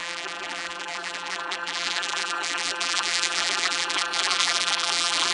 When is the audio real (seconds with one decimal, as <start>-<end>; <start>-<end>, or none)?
none